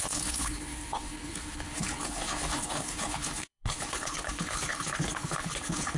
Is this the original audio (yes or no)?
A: no